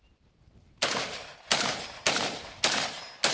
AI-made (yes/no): yes